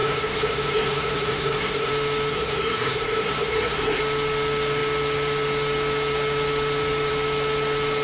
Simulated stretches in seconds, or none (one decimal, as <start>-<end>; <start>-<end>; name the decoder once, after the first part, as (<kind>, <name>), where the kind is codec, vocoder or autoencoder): 0.0-1.9 (codec, SNAC); 2.3-4.0